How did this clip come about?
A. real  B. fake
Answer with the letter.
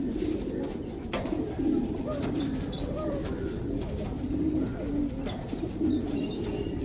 B